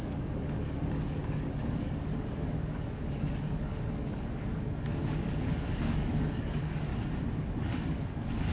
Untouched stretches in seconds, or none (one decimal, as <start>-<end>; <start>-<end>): 6.9-7.5